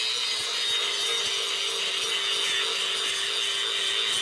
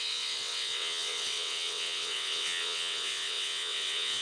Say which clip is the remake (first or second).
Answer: second